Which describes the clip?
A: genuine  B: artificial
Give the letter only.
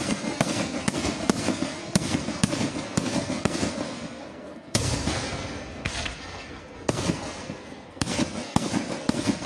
B